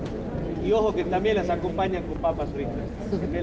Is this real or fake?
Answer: real